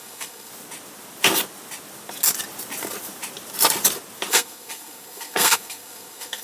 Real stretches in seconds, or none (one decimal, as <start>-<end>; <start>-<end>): 0.5-4.3